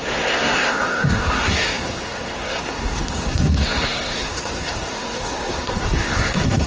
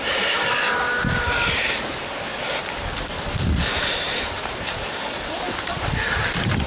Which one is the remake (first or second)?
first